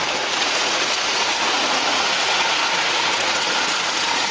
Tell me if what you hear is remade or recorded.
remade